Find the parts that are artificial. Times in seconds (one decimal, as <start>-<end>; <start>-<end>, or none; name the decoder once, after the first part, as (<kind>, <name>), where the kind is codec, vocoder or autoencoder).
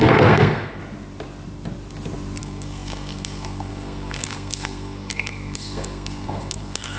0.0-0.8 (codec, SNAC); 2.4-7.0